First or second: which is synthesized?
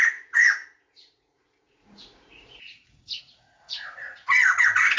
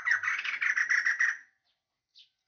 first